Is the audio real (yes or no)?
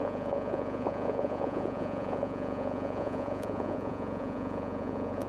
no